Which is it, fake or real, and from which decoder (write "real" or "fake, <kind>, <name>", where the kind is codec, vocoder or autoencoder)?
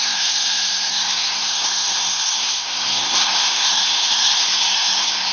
fake, codec, SNAC